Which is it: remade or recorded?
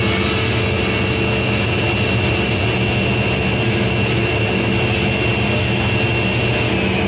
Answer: recorded